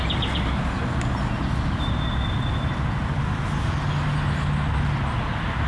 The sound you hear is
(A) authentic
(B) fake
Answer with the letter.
A